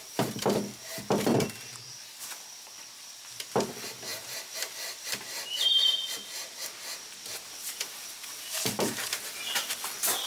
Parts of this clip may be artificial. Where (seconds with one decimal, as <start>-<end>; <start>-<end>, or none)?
4.1-5.7